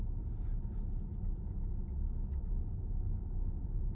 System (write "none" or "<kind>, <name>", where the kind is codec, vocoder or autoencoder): none